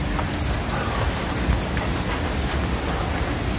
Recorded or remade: recorded